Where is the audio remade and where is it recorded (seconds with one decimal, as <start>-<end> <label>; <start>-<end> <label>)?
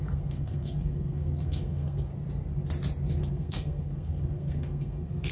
0.0-2.1 remade; 2.1-3.2 recorded; 3.2-5.3 remade